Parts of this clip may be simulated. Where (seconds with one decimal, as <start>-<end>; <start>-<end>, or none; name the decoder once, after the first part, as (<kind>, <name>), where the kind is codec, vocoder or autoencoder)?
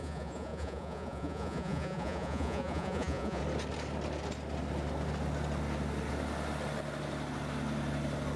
0.0-3.4 (vocoder, Vocos)